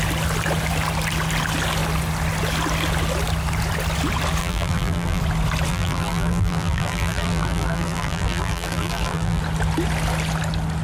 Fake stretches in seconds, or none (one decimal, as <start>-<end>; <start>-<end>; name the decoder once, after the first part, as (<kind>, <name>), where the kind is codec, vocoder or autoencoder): 4.4-5.2 (vocoder, BigVGAN v2); 5.7-9.4